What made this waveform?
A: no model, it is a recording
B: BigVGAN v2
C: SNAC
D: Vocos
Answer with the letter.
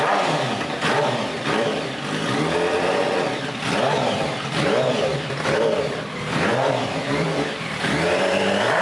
B